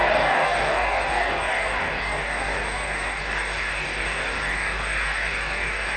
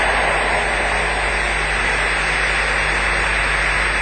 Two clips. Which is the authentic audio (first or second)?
second